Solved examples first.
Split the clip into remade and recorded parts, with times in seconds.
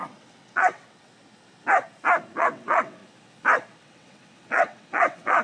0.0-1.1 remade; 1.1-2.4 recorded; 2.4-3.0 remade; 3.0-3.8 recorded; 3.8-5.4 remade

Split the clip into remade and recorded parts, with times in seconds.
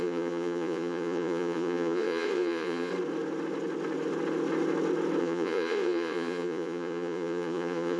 0.0-2.9 remade; 2.9-5.2 recorded; 5.2-8.0 remade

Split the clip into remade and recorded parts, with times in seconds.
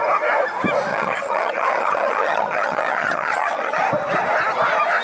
0.0-0.9 recorded; 0.9-3.8 remade; 3.8-5.0 recorded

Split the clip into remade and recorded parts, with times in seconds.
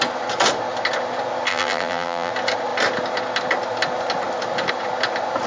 0.0-1.5 recorded; 1.5-2.3 remade; 2.3-5.5 recorded